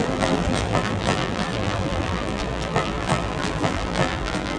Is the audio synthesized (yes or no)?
yes